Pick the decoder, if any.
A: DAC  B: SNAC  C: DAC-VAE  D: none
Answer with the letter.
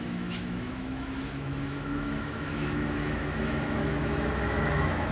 C